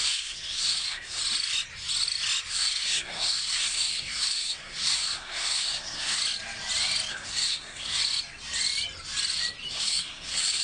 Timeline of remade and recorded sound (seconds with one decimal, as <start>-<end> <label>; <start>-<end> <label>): 0.0-1.2 remade; 1.2-2.5 recorded; 2.5-6.2 remade; 6.2-7.1 recorded; 7.1-8.0 remade; 8.0-9.7 recorded; 9.7-10.6 remade